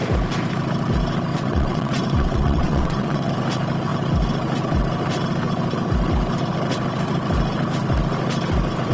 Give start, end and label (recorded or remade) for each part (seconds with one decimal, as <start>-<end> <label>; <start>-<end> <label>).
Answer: 0.0-1.3 recorded; 1.3-3.3 remade; 3.3-8.9 recorded